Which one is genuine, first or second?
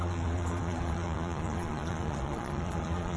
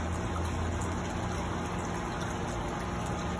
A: second